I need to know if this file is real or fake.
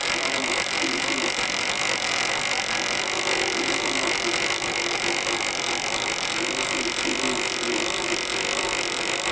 real